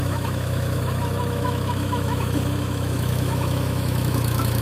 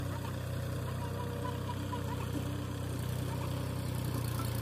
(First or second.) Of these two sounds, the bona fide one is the second